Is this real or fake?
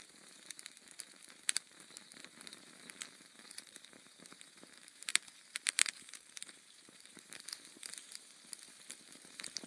fake